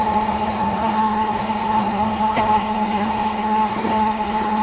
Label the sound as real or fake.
fake